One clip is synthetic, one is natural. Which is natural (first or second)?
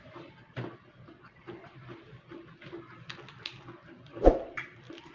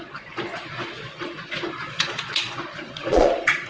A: first